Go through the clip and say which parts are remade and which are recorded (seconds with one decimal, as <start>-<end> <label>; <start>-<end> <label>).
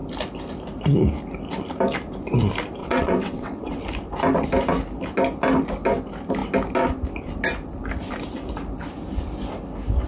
0.0-2.8 recorded; 2.8-3.8 remade; 3.8-10.1 recorded